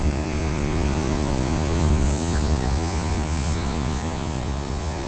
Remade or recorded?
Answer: remade